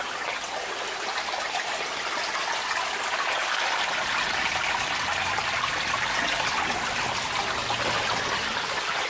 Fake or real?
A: real